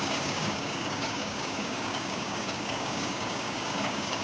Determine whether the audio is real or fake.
fake